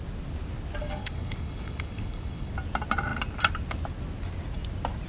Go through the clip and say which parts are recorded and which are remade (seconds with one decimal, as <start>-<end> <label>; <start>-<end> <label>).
0.0-0.8 recorded; 0.8-2.5 remade; 2.5-5.1 recorded